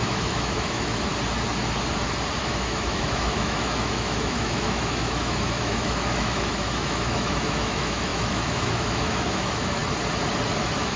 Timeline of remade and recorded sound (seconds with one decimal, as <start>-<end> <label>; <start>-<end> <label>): 0.0-1.1 remade; 1.1-2.4 recorded; 2.4-9.8 remade; 9.8-10.6 recorded; 10.6-11.0 remade